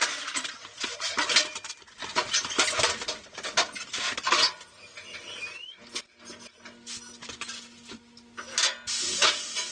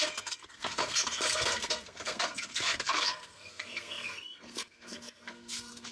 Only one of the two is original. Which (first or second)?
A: first